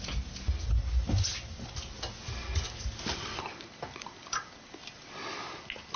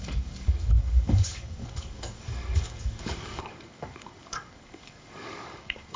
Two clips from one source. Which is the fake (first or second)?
second